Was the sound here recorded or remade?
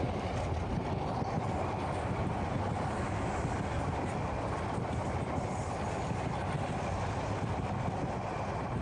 recorded